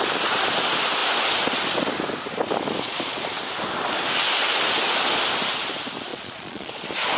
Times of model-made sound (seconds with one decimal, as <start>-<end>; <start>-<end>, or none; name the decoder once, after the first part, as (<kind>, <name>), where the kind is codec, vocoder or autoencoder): 6.1-6.7 (vocoder, Vocos)